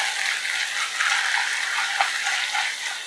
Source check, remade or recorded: recorded